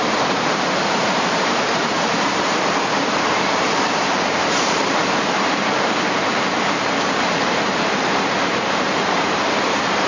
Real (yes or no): no